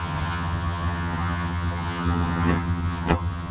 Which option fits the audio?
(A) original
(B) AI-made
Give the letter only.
B